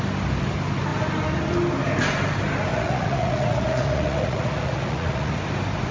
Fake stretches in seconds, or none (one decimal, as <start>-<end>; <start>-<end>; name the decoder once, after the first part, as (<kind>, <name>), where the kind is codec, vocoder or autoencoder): 2.7-5.4 (vocoder, Vocos)